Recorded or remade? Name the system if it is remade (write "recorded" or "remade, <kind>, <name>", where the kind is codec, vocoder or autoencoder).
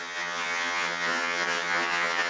remade, vocoder, HiFi-GAN